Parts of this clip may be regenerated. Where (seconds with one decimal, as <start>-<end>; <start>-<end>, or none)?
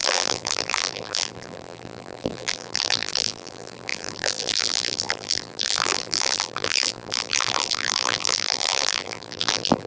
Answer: 0.0-9.9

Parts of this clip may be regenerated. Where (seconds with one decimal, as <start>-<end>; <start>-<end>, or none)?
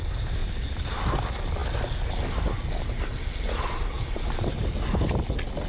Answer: 0.4-1.0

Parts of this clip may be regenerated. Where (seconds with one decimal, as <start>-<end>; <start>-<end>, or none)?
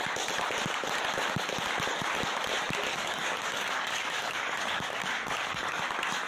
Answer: 2.9-5.8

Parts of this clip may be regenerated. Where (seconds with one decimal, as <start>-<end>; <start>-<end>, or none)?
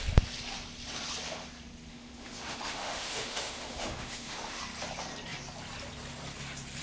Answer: 1.9-4.6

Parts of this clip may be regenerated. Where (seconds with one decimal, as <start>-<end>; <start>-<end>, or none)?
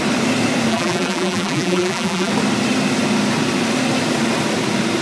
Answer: 0.7-2.3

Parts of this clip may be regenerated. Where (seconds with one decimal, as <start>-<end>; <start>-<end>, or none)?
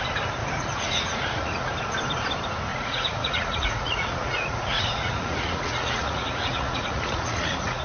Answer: 0.4-1.7; 2.7-7.8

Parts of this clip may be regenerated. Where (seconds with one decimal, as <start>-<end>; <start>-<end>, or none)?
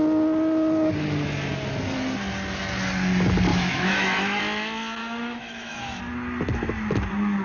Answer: 3.5-4.4; 5.0-6.0